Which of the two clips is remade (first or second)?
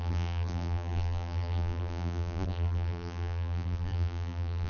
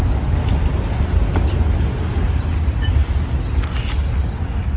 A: first